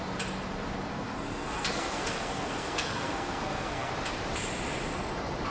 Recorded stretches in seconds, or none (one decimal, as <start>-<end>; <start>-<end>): 0.0-0.9; 3.9-5.5